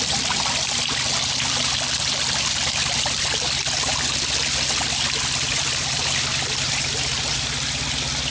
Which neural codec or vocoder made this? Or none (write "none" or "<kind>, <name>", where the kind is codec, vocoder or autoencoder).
none